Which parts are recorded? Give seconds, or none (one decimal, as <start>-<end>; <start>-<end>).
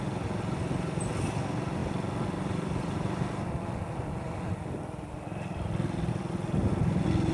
0.0-7.3